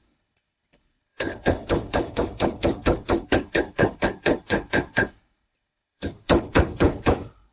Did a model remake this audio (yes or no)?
yes